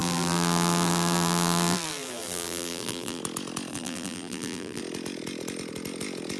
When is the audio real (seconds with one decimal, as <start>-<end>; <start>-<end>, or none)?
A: 3.2-3.7; 4.8-6.4